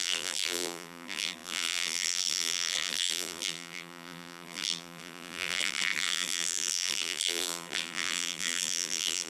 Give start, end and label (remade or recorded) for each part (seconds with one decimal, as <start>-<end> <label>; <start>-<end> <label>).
0.0-9.3 remade